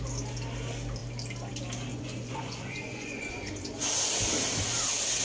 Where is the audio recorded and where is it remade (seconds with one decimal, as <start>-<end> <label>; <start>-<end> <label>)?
0.0-1.9 recorded; 1.9-3.5 remade; 3.5-5.2 recorded